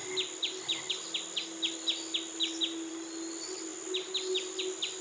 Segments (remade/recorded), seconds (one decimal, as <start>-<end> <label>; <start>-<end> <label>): 0.0-5.0 recorded